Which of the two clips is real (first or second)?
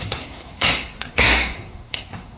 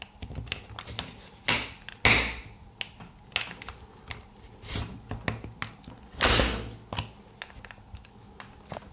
second